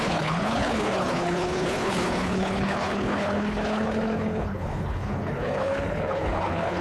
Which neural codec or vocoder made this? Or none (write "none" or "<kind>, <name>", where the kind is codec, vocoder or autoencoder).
codec, HILCodec